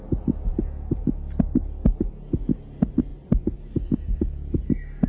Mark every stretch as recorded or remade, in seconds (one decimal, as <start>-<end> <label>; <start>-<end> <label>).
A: 0.0-5.1 recorded